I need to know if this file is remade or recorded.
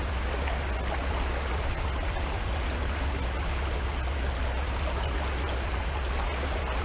recorded